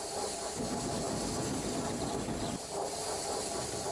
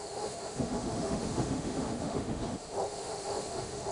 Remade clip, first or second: second